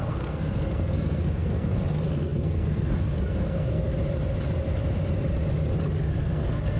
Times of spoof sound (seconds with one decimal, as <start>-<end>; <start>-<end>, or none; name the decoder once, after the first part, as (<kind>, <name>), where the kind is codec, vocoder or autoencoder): 0.0-3.9 (codec, SNAC); 6.2-6.8